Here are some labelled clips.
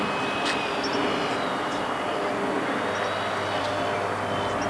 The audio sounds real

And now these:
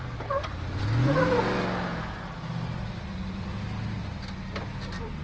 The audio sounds real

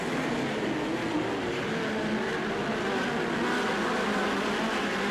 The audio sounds real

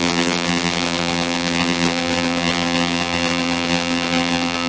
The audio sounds fake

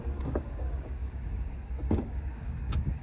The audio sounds fake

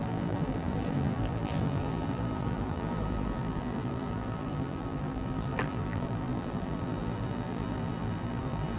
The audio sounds fake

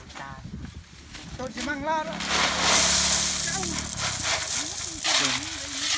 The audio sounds real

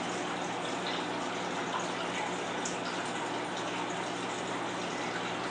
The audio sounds real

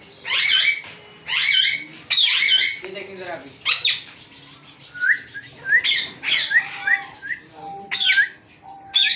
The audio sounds real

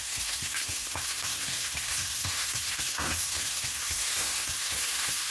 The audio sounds fake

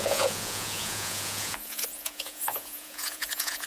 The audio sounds fake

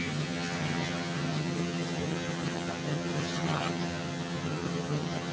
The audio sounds fake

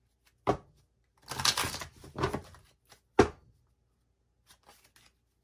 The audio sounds real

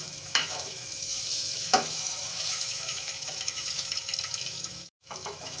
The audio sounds fake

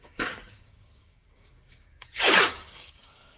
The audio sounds fake